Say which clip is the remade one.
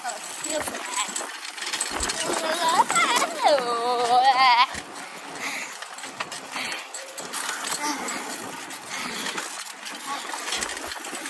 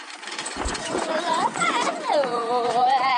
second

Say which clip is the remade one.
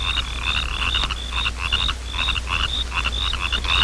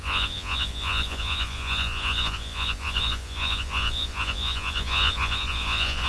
second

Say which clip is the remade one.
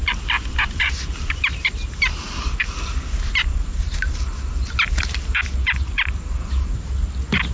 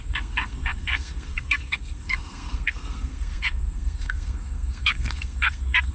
second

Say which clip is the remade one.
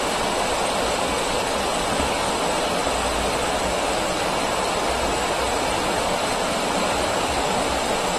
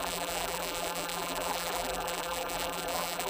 second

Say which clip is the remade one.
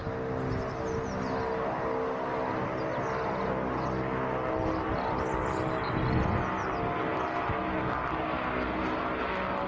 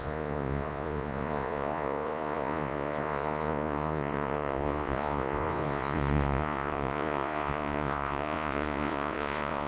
second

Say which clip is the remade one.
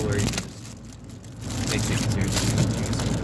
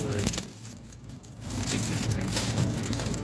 second